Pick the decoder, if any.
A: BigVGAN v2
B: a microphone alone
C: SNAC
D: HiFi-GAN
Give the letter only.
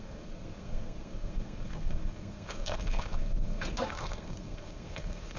C